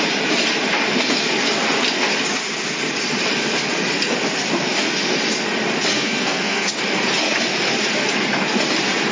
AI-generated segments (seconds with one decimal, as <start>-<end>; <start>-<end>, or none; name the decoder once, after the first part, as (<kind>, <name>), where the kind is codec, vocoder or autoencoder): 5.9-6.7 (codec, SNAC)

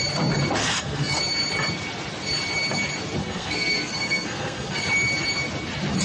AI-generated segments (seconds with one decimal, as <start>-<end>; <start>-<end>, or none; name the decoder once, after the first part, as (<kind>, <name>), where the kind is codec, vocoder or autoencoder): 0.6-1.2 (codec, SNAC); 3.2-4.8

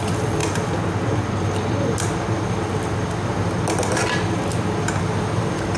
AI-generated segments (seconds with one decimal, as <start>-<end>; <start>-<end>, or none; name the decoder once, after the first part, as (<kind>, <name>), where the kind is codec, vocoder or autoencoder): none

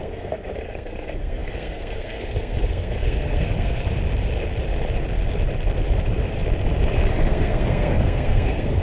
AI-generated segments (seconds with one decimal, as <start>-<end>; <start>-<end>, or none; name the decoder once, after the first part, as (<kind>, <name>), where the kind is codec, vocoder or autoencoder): 0.0-3.8 (codec, SNAC); 7.3-8.8